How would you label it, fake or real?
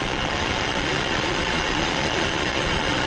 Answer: fake